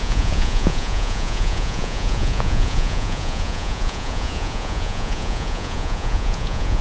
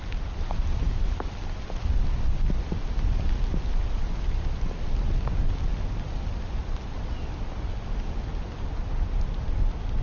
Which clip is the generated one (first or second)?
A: first